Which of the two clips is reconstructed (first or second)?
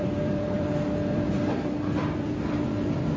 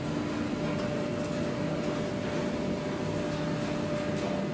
first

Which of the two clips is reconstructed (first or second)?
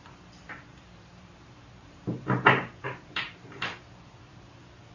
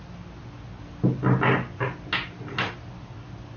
first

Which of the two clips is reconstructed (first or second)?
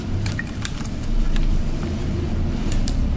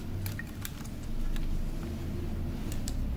first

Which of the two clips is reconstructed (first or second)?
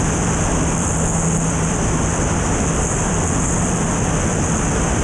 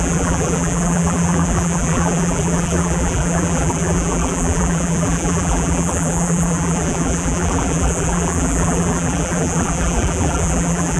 second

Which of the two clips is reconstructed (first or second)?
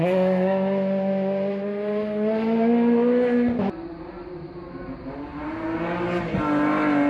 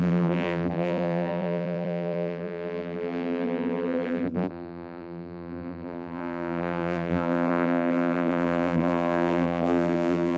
second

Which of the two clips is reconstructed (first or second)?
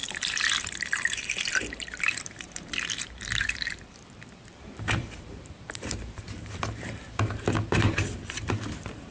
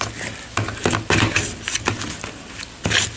first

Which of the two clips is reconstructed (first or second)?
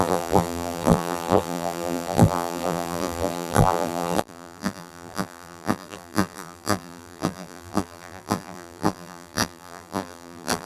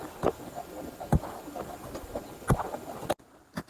first